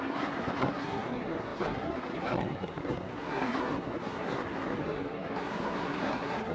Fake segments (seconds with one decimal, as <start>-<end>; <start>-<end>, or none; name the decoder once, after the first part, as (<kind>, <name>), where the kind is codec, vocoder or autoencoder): 0.0-6.5 (codec, SNAC)